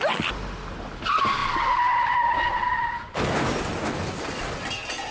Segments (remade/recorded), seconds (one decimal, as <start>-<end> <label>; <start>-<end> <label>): 0.0-5.1 recorded